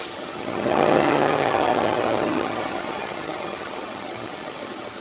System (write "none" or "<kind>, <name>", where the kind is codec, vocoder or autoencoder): vocoder, HiFi-GAN